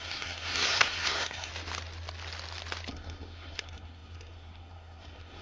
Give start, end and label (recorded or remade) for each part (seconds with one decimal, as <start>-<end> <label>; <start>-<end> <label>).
0.0-1.5 remade; 1.5-2.9 recorded; 2.9-5.4 remade